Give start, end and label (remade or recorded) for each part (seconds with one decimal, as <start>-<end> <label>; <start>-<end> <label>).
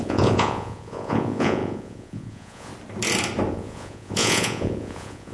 0.0-2.7 remade; 2.7-3.5 recorded; 3.5-5.3 remade